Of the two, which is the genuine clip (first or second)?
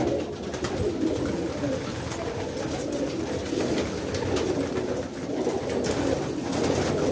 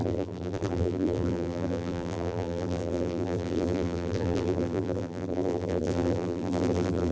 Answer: first